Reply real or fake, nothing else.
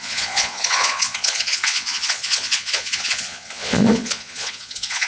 fake